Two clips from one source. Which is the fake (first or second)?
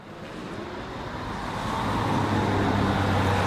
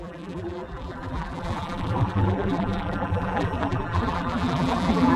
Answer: second